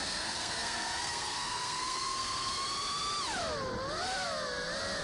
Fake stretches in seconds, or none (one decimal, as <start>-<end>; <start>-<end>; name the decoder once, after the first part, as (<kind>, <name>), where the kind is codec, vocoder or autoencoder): 0.0-2.5 (codec, SNAC)